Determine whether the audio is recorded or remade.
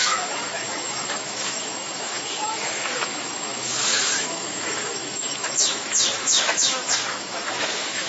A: remade